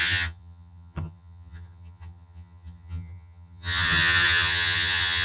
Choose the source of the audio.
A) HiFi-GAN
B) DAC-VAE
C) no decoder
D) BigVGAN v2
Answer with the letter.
A